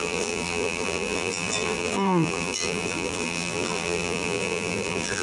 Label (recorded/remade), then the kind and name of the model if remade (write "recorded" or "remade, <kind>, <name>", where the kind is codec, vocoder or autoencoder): remade, vocoder, BigVGAN v2